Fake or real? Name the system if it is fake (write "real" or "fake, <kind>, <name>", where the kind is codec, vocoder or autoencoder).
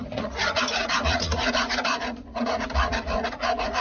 fake, vocoder, Vocos